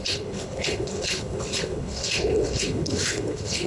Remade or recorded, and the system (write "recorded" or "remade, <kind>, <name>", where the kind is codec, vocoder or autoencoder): remade, codec, HILCodec